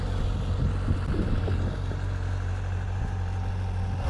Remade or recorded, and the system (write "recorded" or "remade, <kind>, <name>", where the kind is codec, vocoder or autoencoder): recorded